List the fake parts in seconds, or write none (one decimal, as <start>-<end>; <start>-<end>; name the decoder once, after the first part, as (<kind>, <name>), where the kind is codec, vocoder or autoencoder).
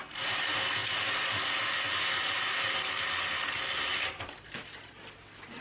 none